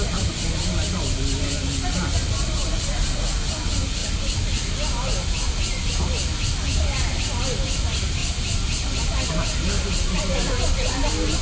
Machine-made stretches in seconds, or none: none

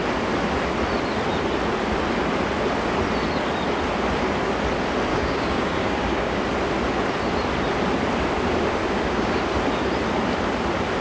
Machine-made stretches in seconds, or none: 5.1-6.4 (codec, DAC); 8.8-9.4

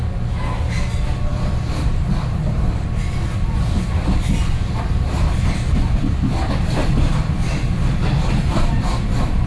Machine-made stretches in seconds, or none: 1.3-5.2 (vocoder, BigVGAN v2); 6.8-8.4

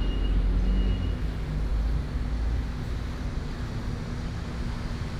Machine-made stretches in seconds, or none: none

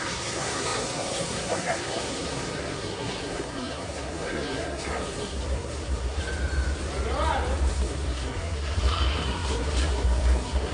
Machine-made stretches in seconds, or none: 0.0-6.2 (codec, SNAC); 7.7-10.7